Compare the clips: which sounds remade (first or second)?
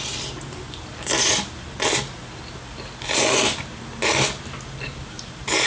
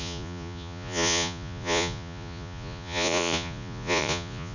second